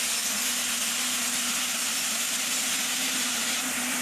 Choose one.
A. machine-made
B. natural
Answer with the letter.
B